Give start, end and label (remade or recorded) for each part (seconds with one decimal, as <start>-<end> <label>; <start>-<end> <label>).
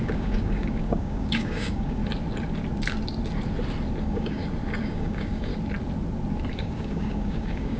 0.0-2.0 remade; 2.0-4.0 recorded; 4.0-4.4 remade; 4.4-4.9 recorded; 4.9-5.5 remade; 5.5-6.5 recorded; 6.5-7.8 remade